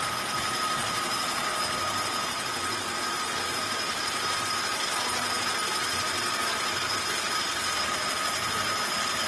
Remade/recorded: recorded